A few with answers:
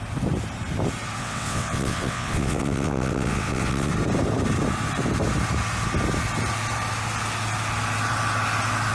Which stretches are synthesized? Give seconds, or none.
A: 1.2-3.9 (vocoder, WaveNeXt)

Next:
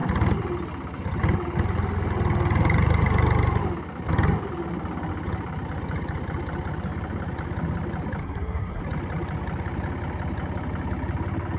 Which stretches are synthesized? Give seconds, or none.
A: 8.2-8.8 (codec, SNAC)